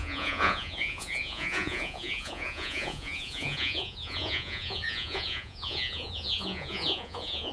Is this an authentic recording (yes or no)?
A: no